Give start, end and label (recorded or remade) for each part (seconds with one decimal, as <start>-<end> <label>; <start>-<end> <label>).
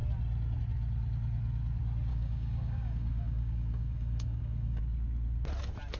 0.0-2.1 recorded; 2.1-4.8 remade; 4.8-6.0 recorded